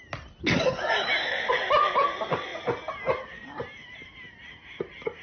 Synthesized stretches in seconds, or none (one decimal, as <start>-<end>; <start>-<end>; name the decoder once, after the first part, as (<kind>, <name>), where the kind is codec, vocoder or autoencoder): none